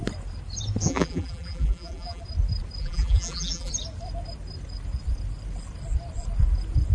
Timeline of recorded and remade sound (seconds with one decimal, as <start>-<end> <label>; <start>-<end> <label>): 0.0-0.9 recorded; 0.9-2.2 remade; 2.2-2.8 recorded; 2.8-3.7 remade; 3.7-6.9 recorded